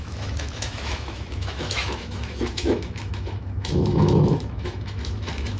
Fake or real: fake